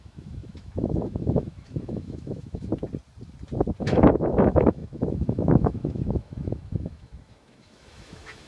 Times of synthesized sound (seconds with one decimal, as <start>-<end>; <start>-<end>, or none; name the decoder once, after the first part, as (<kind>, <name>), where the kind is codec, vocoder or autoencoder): 0.0-2.7 (autoencoder, DAC-VAE); 3.8-8.5